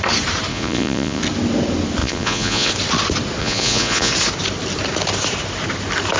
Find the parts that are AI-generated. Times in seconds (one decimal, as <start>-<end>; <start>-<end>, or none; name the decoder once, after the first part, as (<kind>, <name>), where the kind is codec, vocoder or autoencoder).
0.5-1.2 (vocoder, Vocos); 2.0-2.7; 3.4-4.1